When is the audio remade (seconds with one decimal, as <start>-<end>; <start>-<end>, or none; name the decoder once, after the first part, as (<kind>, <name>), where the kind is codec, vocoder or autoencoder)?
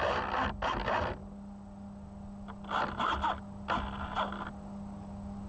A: none